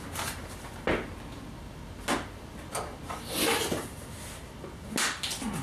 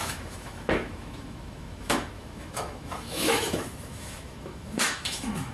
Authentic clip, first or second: first